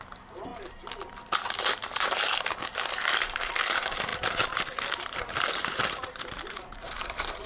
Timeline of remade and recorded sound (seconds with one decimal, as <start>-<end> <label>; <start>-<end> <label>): 0.0-7.5 remade